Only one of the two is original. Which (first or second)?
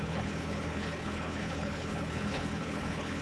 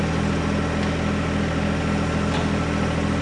second